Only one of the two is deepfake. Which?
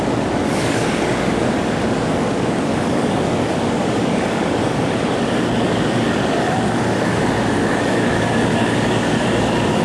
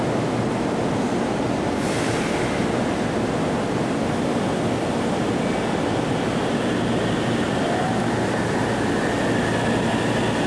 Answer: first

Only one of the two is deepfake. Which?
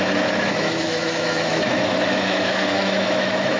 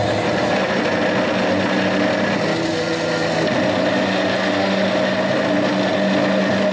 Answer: first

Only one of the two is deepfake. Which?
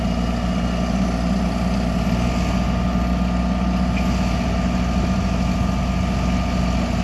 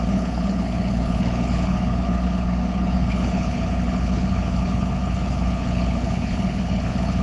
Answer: second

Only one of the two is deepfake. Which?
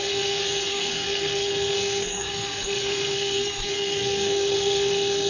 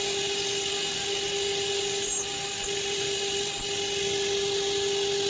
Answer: first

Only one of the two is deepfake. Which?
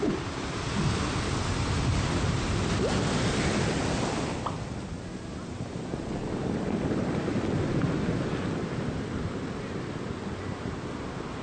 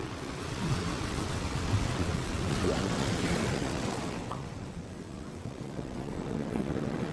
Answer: second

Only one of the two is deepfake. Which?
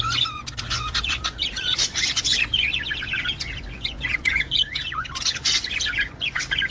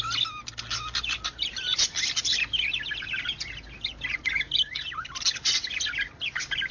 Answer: first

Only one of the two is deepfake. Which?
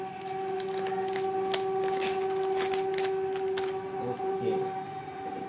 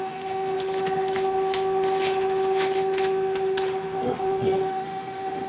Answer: second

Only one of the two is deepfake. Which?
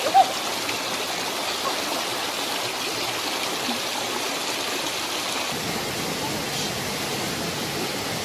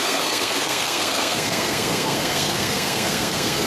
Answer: second